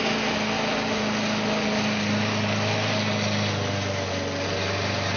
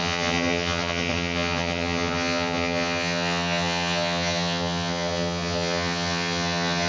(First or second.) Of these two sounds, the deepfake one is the second